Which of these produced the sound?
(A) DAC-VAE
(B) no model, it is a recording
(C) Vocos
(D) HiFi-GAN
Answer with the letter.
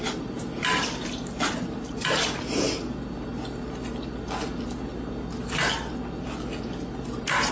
B